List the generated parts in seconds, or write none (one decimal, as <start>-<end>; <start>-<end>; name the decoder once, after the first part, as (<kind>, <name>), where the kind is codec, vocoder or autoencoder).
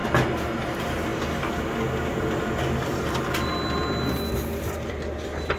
0.6-1.1 (vocoder, BigVGAN v2); 2.4-3.8; 4.6-5.6